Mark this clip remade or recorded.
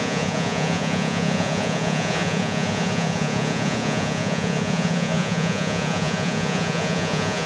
remade